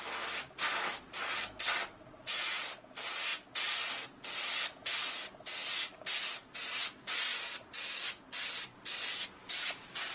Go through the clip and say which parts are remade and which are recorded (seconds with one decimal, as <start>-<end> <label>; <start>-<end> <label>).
0.0-0.7 recorded; 0.7-1.8 remade; 1.8-7.3 recorded; 7.3-8.0 remade; 8.0-10.1 recorded